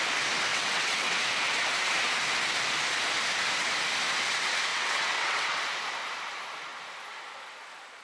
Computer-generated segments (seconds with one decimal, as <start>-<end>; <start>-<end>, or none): 0.5-1.1; 4.7-5.6